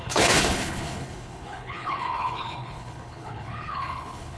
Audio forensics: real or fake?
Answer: fake